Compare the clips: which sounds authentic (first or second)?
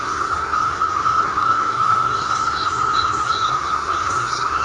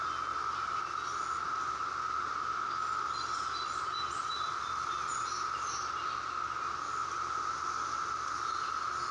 second